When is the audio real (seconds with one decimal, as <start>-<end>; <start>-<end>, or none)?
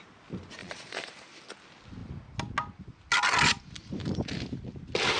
0.0-0.6; 1.1-5.2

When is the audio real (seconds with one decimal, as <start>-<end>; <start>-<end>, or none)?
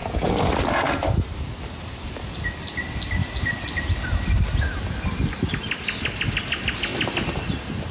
0.5-7.9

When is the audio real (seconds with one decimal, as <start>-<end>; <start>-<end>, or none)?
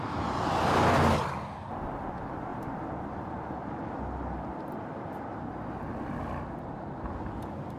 0.0-7.8